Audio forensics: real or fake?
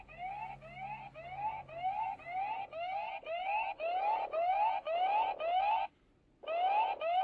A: real